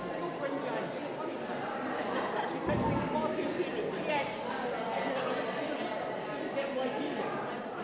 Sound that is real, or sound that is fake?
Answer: real